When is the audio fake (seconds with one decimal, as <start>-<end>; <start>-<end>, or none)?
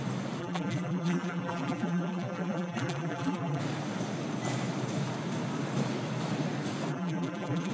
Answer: 0.4-3.6; 6.9-7.7